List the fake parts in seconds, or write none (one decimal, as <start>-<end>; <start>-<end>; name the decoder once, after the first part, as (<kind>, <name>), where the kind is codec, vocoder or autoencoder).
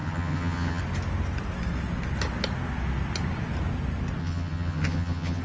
0.0-0.8 (vocoder, HiFi-GAN); 4.2-5.4